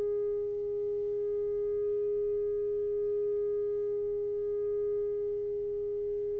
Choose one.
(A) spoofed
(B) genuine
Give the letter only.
B